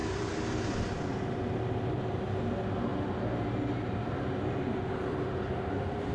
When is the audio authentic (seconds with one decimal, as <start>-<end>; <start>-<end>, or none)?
0.0-6.1